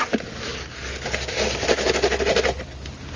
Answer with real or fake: real